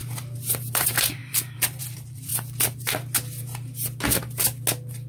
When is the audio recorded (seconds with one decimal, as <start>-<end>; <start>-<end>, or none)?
0.0-0.7; 2.3-5.1